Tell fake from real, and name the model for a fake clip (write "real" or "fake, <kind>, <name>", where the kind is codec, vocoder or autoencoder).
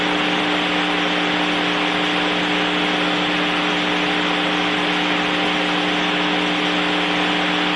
real